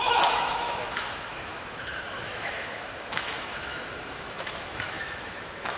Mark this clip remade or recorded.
remade